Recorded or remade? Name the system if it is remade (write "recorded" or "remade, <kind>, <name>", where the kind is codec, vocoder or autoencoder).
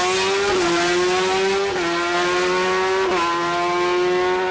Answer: recorded